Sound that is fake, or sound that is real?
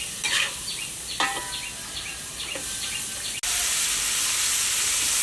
real